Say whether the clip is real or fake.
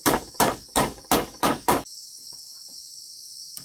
fake